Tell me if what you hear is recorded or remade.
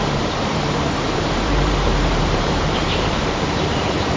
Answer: remade